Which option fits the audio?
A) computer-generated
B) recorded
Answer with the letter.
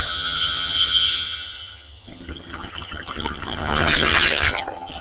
A